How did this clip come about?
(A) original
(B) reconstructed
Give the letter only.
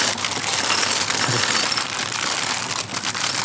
A